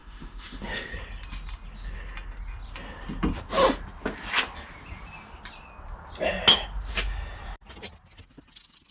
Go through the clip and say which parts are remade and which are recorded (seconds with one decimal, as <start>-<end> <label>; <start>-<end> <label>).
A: 0.0-0.9 remade; 0.9-8.9 recorded

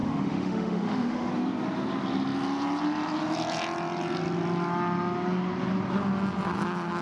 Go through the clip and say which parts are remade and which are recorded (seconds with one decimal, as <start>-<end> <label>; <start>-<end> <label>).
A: 0.0-1.3 remade; 1.3-7.0 recorded

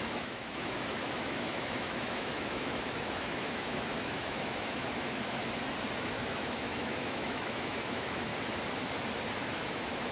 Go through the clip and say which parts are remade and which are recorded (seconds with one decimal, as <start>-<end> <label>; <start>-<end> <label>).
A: 0.0-5.4 remade; 5.4-6.0 recorded; 6.0-8.3 remade; 8.3-9.4 recorded; 9.4-10.1 remade

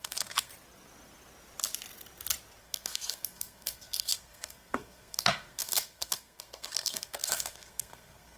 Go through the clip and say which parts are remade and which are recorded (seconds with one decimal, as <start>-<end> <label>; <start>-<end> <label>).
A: 0.0-0.5 remade; 0.5-2.6 recorded; 2.6-8.4 remade

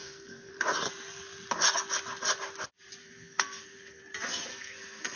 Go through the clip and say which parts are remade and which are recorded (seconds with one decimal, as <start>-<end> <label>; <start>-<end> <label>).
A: 0.0-0.5 remade; 0.5-3.0 recorded; 3.0-4.0 remade; 4.0-4.5 recorded; 4.5-5.2 remade

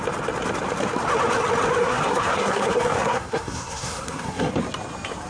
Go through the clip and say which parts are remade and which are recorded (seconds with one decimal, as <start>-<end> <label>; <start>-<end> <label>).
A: 0.0-1.8 recorded; 1.8-4.5 remade; 4.5-5.3 recorded